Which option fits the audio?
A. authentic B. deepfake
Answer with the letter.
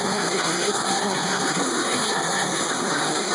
B